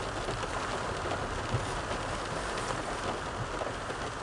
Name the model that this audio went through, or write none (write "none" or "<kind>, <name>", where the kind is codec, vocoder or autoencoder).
none